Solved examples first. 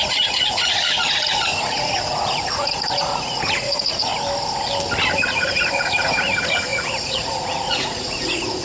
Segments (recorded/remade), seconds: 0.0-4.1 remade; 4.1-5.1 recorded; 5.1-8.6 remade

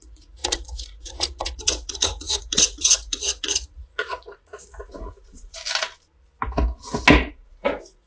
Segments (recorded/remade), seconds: 0.0-5.6 remade; 5.6-7.3 recorded; 7.3-8.1 remade

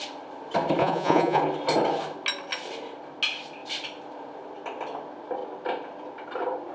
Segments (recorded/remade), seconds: 0.0-0.8 recorded; 0.8-1.4 remade; 1.4-6.7 recorded

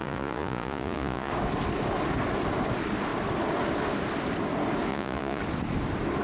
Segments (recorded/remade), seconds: 0.0-1.3 remade; 1.3-4.9 recorded; 4.9-5.4 remade; 5.4-6.2 recorded

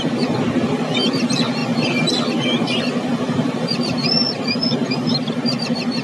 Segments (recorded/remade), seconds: 0.0-6.0 recorded

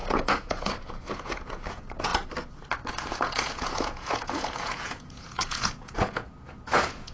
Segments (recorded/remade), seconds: 0.0-2.1 remade; 2.1-2.9 recorded; 2.9-7.1 remade